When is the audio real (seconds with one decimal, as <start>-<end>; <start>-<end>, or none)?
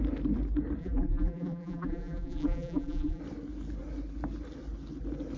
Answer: 0.0-0.8; 3.2-5.4